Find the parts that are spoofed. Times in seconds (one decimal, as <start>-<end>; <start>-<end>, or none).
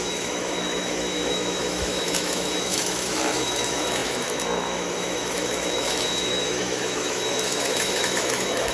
0.0-8.7